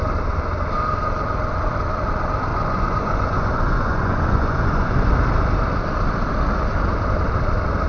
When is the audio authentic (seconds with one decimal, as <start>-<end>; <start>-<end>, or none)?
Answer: 0.0-2.5; 5.1-7.9